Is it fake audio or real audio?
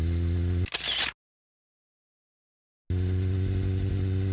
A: real